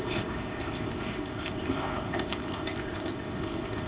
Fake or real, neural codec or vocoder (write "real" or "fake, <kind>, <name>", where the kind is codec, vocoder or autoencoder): fake, codec, ZipCodec